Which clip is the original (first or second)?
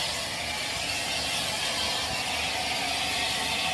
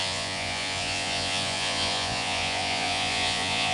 first